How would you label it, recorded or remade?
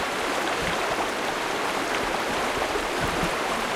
recorded